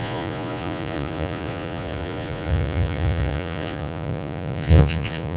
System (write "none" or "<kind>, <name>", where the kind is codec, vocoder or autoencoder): vocoder, Vocos